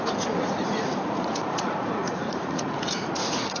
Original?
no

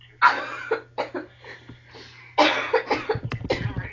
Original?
yes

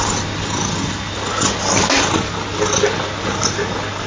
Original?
yes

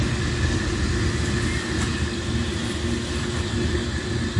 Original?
yes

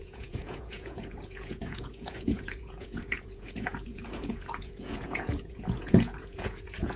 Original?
no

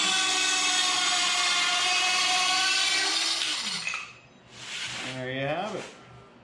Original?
yes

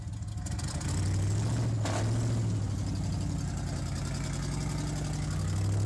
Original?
yes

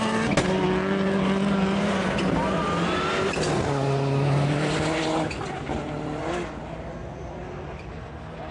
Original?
yes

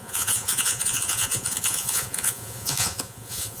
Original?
no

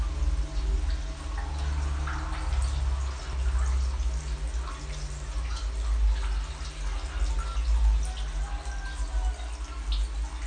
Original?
yes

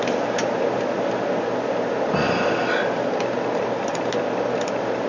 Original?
yes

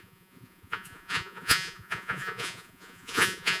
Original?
no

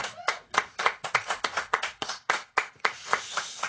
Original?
no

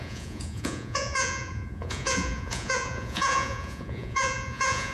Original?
no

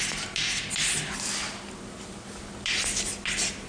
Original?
yes